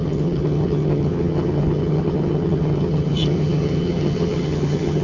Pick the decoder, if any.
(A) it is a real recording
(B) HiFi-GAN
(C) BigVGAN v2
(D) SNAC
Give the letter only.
B